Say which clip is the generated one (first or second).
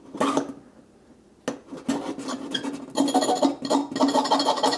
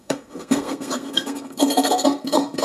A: second